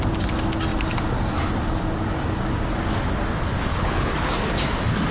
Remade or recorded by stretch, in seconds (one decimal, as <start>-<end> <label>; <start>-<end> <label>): 0.0-3.7 recorded; 3.7-4.3 remade; 4.3-5.1 recorded